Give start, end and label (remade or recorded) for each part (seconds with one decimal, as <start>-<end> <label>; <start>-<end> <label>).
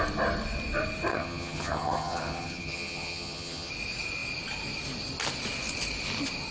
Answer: 0.0-1.1 recorded; 1.1-3.7 remade; 3.7-6.5 recorded